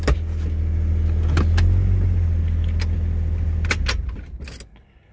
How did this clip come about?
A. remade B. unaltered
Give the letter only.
B